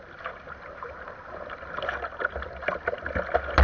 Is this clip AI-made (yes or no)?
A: no